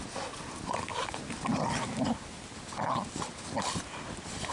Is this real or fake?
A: real